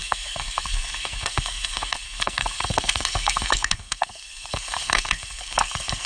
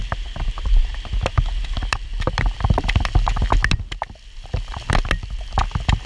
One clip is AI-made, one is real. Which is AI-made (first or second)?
first